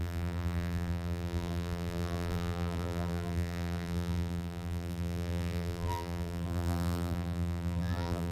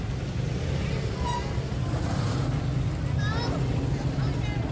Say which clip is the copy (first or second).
first